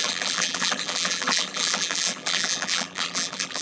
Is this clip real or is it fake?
fake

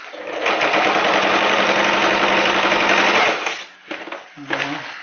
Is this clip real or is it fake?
real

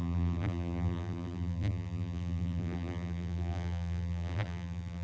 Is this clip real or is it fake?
fake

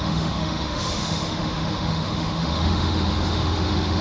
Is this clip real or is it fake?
fake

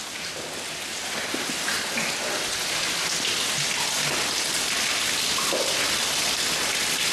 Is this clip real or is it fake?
real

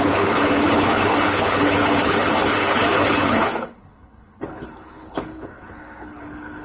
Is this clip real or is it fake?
fake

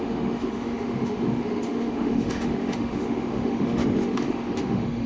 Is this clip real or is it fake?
fake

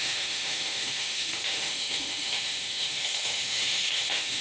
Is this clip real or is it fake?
fake